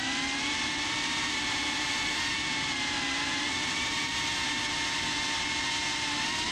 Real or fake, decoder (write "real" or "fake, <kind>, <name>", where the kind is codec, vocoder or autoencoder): real